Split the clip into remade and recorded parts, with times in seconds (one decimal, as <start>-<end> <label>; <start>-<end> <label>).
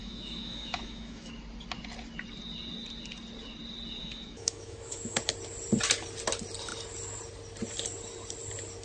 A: 0.0-1.3 remade; 1.3-4.0 recorded; 4.0-5.2 remade; 5.2-8.8 recorded